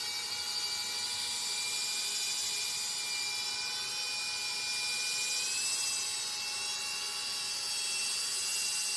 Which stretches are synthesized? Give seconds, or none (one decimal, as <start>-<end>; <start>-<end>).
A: none